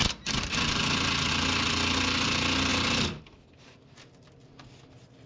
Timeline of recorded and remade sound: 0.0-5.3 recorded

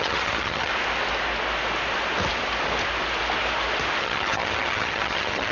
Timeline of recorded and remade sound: 0.0-0.7 remade; 0.7-4.0 recorded; 4.0-5.5 remade

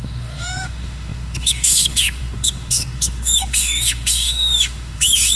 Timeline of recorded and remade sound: 0.0-5.4 remade

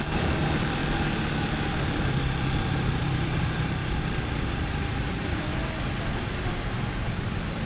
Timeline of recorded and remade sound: 0.0-0.8 remade; 0.8-3.0 recorded; 3.0-3.8 remade; 3.8-4.5 recorded; 4.5-5.5 remade; 5.5-7.1 recorded; 7.1-7.7 remade

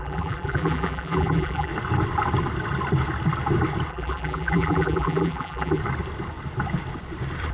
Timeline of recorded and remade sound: 0.0-1.7 remade; 1.7-3.9 recorded; 3.9-5.8 remade; 5.8-7.5 recorded